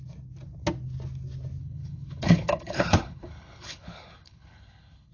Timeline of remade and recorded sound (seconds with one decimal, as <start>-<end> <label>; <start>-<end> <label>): 0.0-1.6 recorded; 1.6-5.1 remade